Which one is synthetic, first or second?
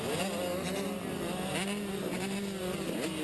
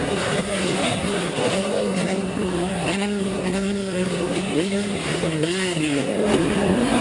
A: second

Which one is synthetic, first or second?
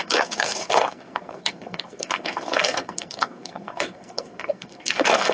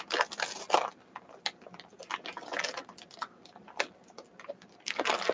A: first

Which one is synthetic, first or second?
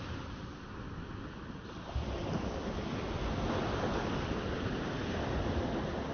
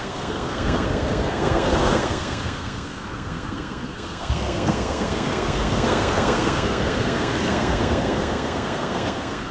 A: second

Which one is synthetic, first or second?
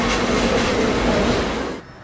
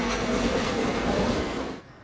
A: second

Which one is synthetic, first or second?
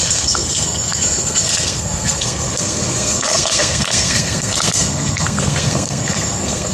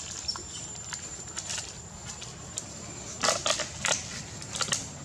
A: first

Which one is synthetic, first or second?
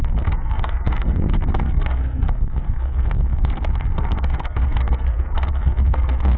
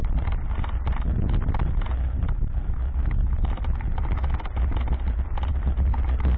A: first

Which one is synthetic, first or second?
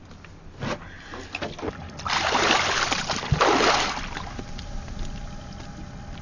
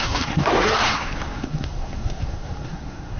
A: second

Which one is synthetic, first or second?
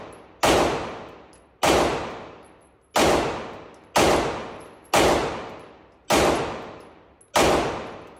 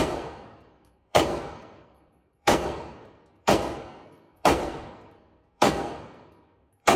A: second